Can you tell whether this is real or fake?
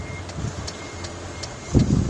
real